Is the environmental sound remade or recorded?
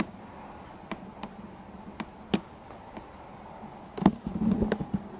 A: recorded